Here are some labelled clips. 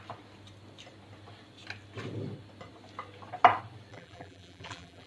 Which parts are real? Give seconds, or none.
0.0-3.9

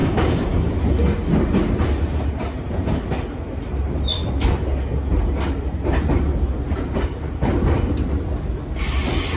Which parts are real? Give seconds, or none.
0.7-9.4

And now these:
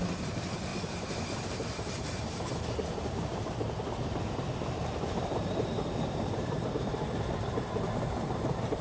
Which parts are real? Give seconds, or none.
0.0-0.7; 2.5-3.3